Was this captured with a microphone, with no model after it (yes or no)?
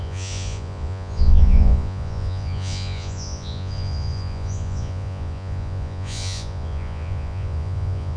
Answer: no